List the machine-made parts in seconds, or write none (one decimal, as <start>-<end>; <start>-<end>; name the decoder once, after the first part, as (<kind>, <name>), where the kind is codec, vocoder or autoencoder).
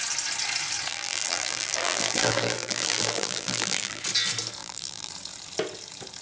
0.9-4.0 (vocoder, BigVGAN v2); 4.6-5.1